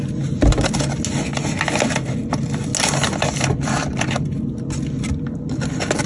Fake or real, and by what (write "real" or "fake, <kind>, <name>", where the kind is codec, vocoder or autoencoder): real